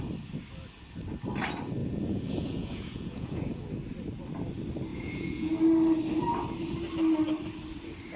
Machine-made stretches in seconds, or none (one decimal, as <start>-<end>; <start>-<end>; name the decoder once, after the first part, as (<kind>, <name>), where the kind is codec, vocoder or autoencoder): 1.8-3.6 (vocoder, Vocos); 4.9-5.5

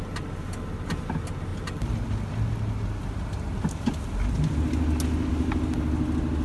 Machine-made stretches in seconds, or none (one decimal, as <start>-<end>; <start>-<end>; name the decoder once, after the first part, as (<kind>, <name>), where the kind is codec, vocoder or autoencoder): none